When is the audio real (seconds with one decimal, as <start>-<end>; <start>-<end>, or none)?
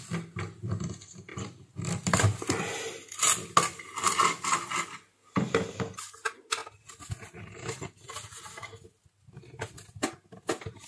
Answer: 0.0-1.3; 2.9-10.9